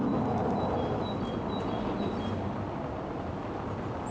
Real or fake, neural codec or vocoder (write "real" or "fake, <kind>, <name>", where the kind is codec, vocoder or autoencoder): real